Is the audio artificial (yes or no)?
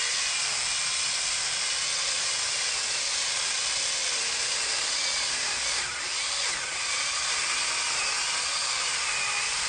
no